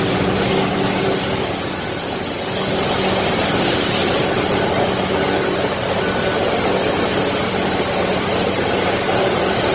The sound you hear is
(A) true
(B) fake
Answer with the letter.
A